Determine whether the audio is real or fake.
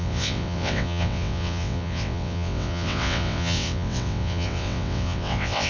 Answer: fake